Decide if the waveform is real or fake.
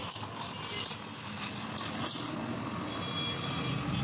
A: real